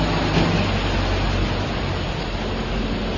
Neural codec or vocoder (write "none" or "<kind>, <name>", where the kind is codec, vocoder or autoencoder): none